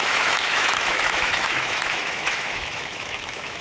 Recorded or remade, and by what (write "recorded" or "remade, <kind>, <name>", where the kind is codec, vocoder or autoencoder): remade, autoencoder, DAC-VAE